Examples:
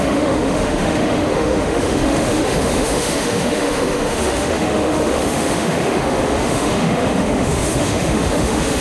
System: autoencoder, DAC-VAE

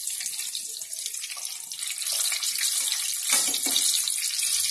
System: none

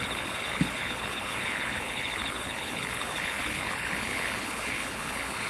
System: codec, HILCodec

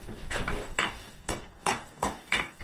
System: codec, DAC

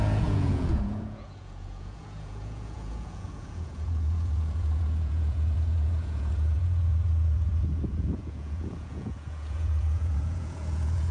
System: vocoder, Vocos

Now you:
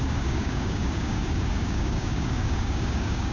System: codec, DAC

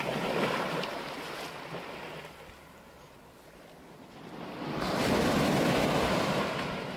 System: none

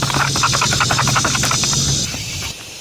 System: none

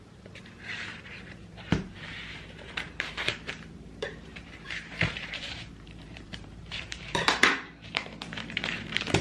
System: vocoder, BigVGAN v2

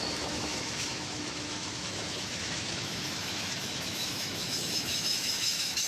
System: autoencoder, DAC-VAE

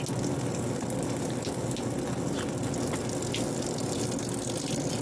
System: none